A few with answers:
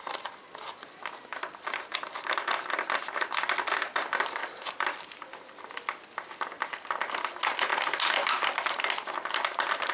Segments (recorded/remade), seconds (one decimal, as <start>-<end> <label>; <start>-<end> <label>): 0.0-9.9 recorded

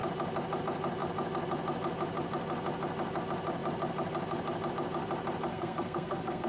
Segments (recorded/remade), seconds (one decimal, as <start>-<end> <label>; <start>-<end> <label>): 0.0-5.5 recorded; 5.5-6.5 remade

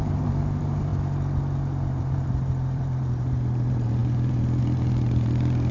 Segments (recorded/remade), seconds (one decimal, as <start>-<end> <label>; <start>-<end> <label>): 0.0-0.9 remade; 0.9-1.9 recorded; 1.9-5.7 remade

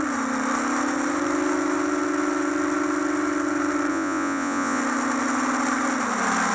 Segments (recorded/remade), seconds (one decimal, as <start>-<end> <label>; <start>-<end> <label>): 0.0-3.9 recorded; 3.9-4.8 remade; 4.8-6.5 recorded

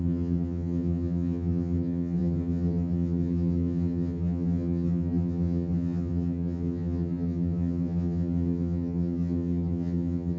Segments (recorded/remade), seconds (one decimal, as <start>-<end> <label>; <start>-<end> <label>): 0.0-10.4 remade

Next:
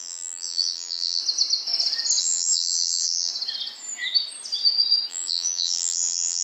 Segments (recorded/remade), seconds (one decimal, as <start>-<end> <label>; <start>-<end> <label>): 0.0-1.2 remade; 1.2-2.2 recorded; 2.2-3.3 remade; 3.3-5.1 recorded; 5.1-6.4 remade

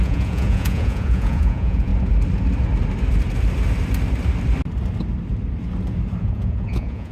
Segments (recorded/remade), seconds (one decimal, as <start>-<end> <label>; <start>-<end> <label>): 0.0-1.9 remade; 1.9-6.2 recorded; 6.2-7.1 remade

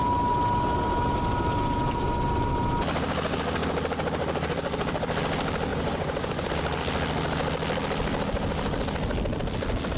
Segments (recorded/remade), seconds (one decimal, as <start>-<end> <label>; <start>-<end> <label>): 0.0-5.7 recorded; 5.7-6.5 remade; 6.5-10.0 recorded